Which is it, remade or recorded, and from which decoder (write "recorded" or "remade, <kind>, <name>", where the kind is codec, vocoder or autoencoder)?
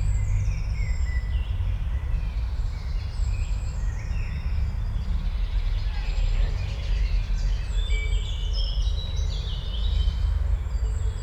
recorded